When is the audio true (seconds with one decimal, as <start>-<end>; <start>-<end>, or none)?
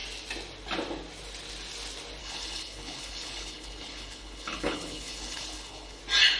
0.0-2.2; 6.0-6.4